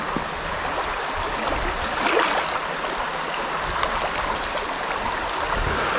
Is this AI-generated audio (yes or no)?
no